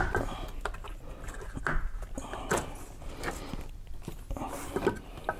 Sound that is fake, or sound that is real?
real